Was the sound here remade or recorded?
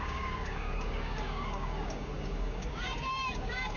remade